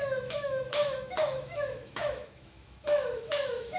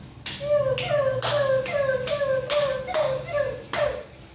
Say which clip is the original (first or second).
second